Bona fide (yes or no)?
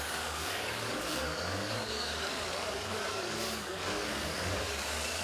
no